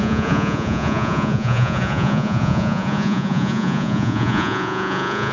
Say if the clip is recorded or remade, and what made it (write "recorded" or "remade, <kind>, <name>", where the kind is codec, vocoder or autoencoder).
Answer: remade, vocoder, Vocos